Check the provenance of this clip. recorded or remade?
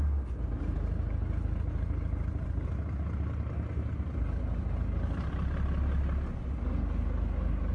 recorded